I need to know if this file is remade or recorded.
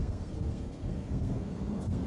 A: remade